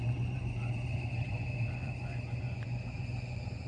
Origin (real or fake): fake